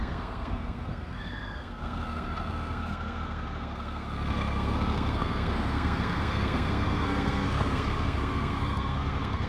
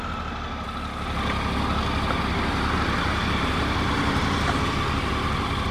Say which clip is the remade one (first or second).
first